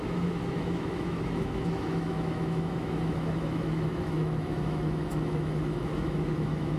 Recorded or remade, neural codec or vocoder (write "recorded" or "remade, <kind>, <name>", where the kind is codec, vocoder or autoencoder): remade, autoencoder, DAC-VAE